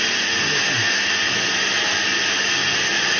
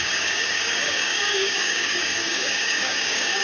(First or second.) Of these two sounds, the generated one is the second